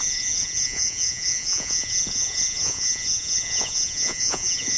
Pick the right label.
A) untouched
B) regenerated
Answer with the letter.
B